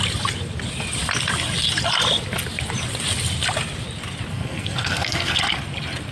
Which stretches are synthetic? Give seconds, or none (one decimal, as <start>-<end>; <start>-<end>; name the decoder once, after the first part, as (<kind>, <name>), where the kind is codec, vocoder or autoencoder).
4.3-5.4 (codec, SNAC)